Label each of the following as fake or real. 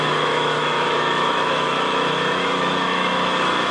fake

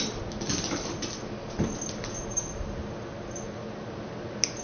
real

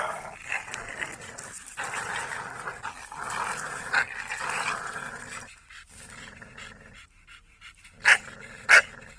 real